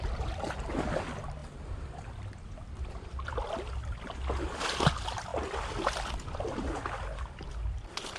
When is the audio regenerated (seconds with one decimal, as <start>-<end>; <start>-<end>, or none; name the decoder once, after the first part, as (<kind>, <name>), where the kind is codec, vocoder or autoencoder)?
none